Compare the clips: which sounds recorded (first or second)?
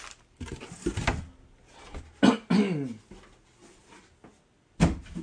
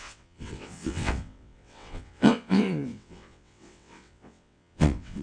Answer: first